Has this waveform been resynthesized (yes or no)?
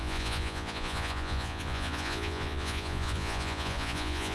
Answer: yes